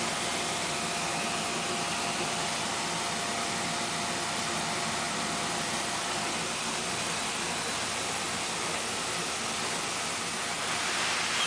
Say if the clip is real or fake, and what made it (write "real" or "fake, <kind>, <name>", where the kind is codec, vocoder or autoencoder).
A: real